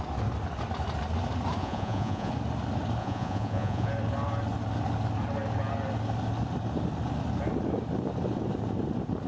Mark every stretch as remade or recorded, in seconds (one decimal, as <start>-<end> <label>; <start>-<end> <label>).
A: 0.0-1.6 recorded; 1.6-2.3 remade; 2.3-3.0 recorded; 3.0-3.9 remade; 3.9-9.3 recorded